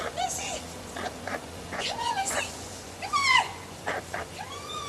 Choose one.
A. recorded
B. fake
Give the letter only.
B